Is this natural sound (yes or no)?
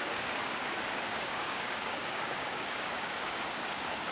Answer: no